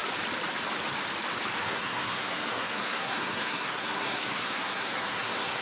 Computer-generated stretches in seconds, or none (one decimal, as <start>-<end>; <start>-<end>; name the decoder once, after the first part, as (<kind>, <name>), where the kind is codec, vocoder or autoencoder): 1.6-5.6 (codec, SNAC)